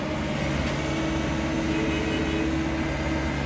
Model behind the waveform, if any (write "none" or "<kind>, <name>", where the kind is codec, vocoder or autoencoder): none